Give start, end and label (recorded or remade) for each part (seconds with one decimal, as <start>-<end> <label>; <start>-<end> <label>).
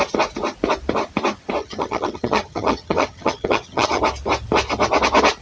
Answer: 0.0-1.6 recorded; 1.6-4.0 remade; 4.0-5.4 recorded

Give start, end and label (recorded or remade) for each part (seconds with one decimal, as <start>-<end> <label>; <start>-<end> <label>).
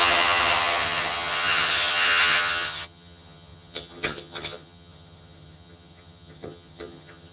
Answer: 0.0-7.3 remade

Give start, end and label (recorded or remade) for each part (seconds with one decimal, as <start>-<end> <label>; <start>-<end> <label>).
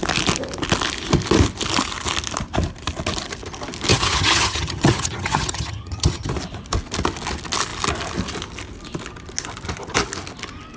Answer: 0.0-3.9 recorded; 3.9-6.3 remade; 6.3-10.8 recorded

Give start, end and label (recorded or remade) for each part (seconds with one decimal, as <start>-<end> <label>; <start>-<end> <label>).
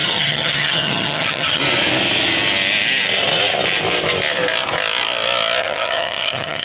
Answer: 0.0-1.6 remade; 1.6-5.6 recorded; 5.6-6.6 remade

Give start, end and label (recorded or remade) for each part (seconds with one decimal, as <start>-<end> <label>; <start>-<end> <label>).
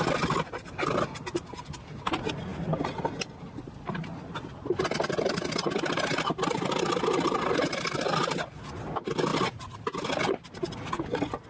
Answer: 0.0-11.5 recorded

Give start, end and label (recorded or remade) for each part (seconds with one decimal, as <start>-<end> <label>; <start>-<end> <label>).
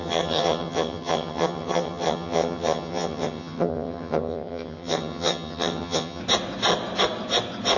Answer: 0.0-6.2 remade; 6.2-7.8 recorded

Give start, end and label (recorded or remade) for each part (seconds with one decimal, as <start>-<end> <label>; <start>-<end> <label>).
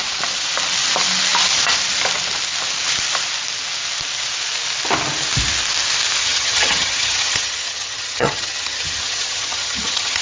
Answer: 0.0-6.2 recorded; 6.2-10.2 remade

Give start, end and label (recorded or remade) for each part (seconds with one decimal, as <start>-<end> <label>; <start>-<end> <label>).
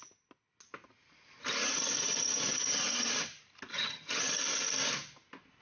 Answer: 0.0-1.6 recorded; 1.6-3.1 remade; 3.1-3.7 recorded; 3.7-4.4 remade; 4.4-5.6 recorded